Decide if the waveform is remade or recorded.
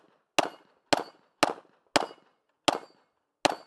recorded